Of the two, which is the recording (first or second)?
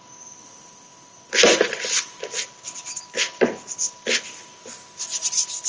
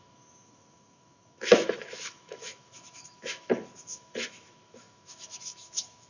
first